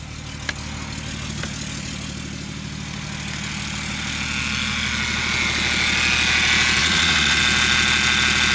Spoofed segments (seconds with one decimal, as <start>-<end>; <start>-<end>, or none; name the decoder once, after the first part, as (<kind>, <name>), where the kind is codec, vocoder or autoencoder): 6.8-7.4 (vocoder, Vocos)